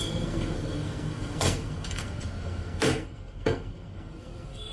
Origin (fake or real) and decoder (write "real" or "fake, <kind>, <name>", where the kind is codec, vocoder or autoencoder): fake, codec, SNAC